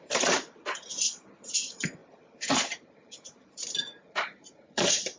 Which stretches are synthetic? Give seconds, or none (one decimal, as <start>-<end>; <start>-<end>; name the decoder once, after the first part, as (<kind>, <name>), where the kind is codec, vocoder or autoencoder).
0.0-5.2 (vocoder, BigVGAN v2)